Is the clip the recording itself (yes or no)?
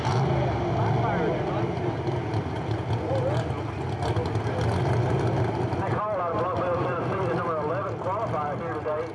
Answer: yes